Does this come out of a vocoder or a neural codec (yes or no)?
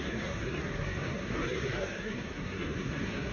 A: yes